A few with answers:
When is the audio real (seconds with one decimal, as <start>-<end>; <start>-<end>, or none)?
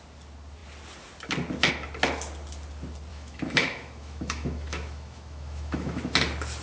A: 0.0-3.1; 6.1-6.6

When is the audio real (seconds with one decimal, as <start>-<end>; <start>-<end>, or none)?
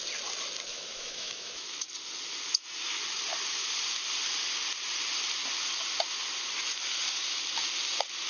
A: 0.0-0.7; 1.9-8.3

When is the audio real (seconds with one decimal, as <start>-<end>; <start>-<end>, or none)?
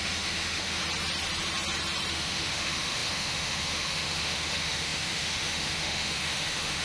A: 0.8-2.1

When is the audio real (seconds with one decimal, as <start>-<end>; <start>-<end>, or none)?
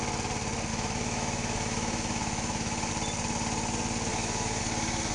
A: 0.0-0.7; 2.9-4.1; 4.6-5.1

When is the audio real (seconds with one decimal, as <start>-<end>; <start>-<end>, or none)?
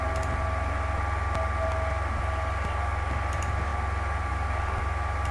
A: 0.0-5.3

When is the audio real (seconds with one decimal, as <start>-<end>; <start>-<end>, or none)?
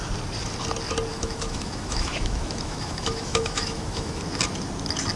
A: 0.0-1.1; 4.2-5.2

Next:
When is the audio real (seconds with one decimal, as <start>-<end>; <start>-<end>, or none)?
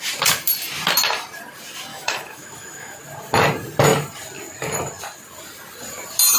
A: 0.0-1.9; 3.0-6.4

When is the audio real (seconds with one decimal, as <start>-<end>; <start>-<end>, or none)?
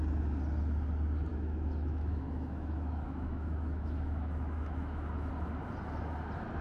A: 0.0-1.3; 5.3-6.6